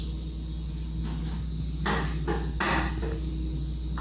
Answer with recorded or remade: recorded